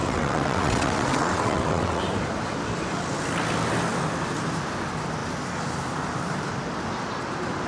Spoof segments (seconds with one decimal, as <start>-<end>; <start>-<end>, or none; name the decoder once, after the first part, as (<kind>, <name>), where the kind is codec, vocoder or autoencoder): 0.0-2.0 (vocoder, WaveNeXt)